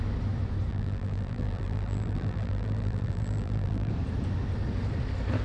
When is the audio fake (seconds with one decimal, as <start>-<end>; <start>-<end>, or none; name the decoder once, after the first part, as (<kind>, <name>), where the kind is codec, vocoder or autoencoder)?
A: 0.7-3.9 (vocoder, BigVGAN v2)